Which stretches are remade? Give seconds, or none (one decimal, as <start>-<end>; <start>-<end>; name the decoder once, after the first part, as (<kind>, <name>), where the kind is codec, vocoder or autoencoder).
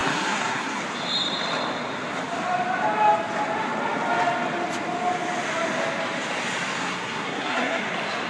0.0-0.8 (codec, SNAC); 6.8-7.8